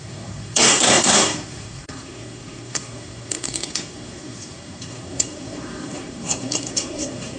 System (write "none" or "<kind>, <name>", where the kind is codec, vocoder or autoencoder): codec, SNAC